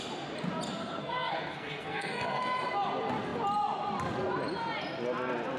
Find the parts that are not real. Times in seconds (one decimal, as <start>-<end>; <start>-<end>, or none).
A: 0.8-2.6